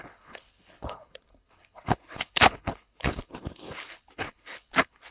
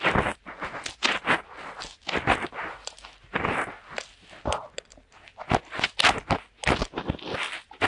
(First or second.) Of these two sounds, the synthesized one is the first